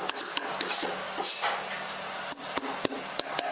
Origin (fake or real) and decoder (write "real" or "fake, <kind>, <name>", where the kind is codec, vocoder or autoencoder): real